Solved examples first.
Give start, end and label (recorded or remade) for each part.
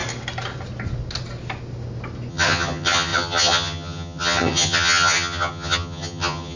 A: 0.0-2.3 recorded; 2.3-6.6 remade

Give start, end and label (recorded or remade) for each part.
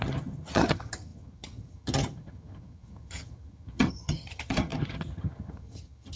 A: 0.0-6.2 remade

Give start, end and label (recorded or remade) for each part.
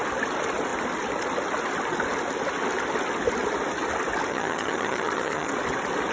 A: 0.0-4.3 recorded; 4.3-5.5 remade; 5.5-6.1 recorded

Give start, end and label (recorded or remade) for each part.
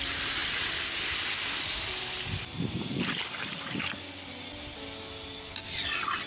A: 0.0-6.3 recorded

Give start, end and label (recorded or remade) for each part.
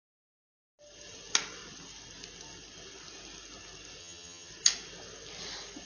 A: 0.0-4.0 recorded; 4.0-4.5 remade; 4.5-5.9 recorded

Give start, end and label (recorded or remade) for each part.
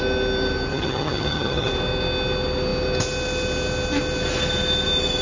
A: 0.0-0.7 recorded; 0.7-1.7 remade; 1.7-5.2 recorded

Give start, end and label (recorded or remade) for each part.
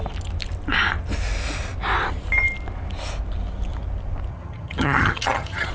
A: 0.0-4.3 recorded; 4.3-5.7 remade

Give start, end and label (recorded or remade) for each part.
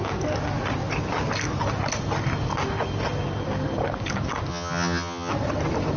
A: 0.0-4.5 recorded; 4.5-5.3 remade; 5.3-6.0 recorded